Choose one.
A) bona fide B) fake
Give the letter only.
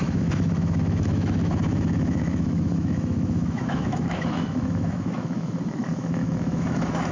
B